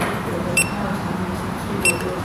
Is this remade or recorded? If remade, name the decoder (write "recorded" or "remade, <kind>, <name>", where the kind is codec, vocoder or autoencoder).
remade, vocoder, BigVGAN v2